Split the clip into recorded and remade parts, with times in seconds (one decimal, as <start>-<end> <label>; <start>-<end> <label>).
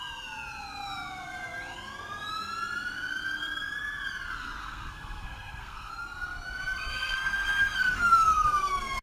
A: 0.0-4.6 recorded; 4.6-5.9 remade; 5.9-6.9 recorded; 6.9-9.0 remade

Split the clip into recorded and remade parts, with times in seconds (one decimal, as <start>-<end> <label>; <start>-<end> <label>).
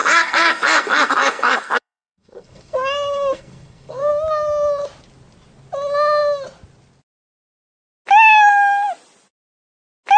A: 0.0-4.1 remade; 4.1-10.2 recorded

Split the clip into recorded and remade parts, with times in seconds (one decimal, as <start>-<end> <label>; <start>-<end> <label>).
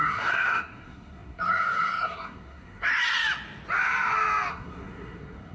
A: 0.0-2.9 remade; 2.9-4.5 recorded; 4.5-5.5 remade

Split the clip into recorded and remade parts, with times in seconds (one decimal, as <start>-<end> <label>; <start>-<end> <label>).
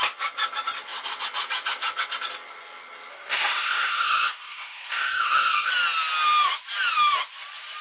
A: 0.0-3.1 recorded; 3.1-5.7 remade; 5.7-7.8 recorded